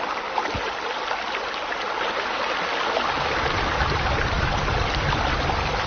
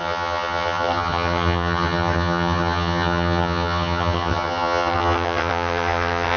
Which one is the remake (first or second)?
second